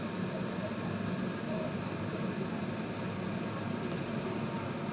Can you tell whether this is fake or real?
real